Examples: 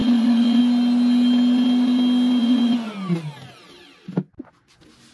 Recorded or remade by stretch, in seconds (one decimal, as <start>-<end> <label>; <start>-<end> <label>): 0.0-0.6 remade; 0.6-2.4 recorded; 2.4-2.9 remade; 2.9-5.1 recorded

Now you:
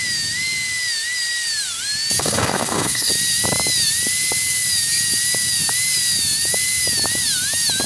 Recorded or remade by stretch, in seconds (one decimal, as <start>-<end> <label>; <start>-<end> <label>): 0.0-2.2 recorded; 2.2-3.1 remade; 3.1-7.9 recorded

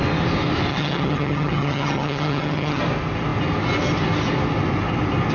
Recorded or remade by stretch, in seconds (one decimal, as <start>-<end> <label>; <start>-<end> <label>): 0.0-0.7 recorded; 0.7-2.8 remade; 2.8-5.3 recorded

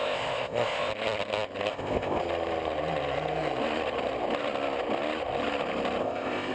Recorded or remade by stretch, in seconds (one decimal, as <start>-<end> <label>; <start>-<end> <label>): 0.0-0.9 remade; 0.9-1.7 recorded; 1.7-2.2 remade; 2.2-6.0 recorded; 6.0-6.5 remade

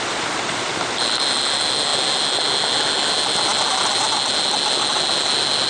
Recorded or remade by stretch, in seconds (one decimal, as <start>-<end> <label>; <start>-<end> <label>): 0.0-5.7 recorded